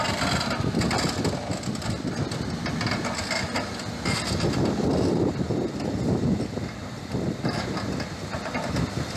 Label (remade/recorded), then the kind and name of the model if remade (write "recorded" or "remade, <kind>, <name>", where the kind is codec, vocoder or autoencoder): recorded